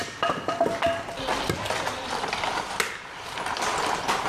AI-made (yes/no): no